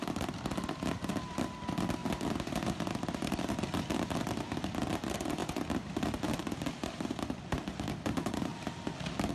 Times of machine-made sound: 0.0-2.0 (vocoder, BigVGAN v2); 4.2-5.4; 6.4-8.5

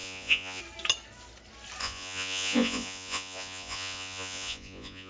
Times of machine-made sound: 0.0-0.6 (vocoder, Vocos); 1.8-5.1

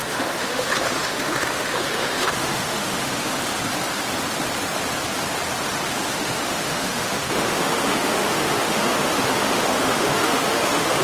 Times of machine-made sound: 0.0-3.4 (autoencoder, DAC-VAE); 6.1-11.0